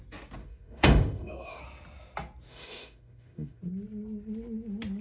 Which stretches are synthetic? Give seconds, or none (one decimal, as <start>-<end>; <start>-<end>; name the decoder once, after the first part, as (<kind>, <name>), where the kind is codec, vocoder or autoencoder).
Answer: 0.4-1.6 (autoencoder, DAC-VAE); 2.5-3.6